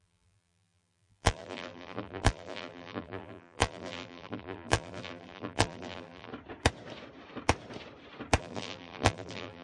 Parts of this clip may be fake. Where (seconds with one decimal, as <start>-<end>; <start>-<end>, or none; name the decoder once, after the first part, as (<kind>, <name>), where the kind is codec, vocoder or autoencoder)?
0.0-6.3 (vocoder, BigVGAN v2); 8.4-9.6